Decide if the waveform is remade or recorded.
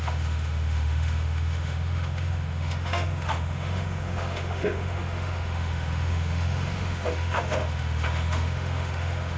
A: remade